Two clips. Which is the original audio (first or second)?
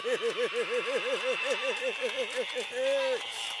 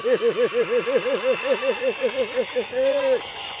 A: first